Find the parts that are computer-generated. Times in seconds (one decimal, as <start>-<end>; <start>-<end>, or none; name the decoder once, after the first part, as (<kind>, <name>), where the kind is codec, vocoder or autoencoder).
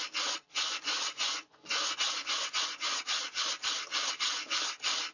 0.5-3.0 (vocoder, Vocos)